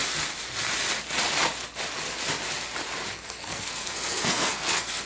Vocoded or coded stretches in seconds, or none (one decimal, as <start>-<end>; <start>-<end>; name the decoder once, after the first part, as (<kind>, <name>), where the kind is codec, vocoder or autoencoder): 3.1-5.1 (codec, SNAC)